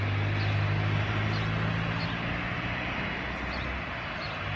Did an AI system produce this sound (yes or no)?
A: no